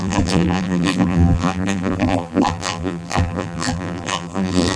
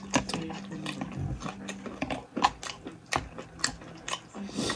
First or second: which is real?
second